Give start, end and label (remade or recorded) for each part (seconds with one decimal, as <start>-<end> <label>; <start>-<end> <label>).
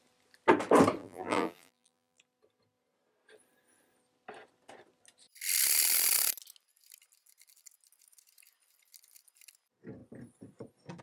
0.0-1.0 recorded; 1.0-2.2 remade; 2.2-11.0 recorded